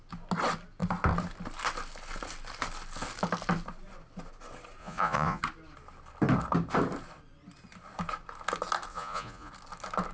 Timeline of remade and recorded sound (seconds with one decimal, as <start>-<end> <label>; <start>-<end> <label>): 0.0-4.8 recorded; 4.8-5.4 remade; 5.4-8.9 recorded; 8.9-9.5 remade; 9.5-10.1 recorded